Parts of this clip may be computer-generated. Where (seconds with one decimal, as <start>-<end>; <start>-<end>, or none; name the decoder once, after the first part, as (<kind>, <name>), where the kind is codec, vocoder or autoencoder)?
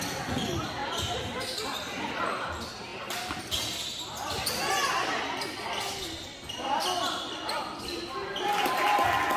0.8-2.3 (vocoder, BigVGAN v2)